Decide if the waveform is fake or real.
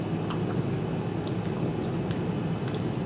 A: real